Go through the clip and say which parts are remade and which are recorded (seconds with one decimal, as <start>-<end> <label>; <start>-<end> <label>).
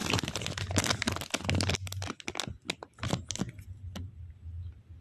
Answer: 0.0-5.0 recorded